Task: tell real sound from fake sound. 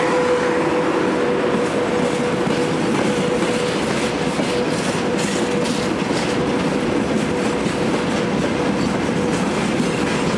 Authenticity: real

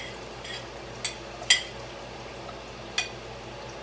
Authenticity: real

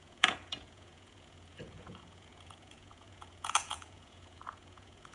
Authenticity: fake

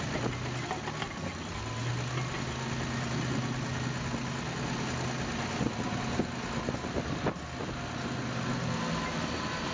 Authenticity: real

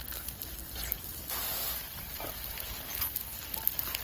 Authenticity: real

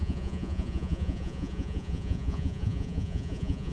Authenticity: fake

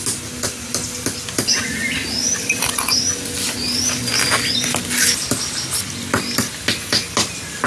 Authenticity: real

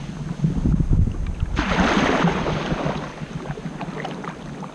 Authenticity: real